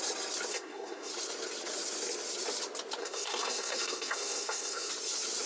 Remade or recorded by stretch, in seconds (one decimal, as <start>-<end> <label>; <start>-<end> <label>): 0.0-0.5 recorded; 0.5-1.1 remade; 1.1-3.0 recorded; 3.0-4.9 remade; 4.9-5.5 recorded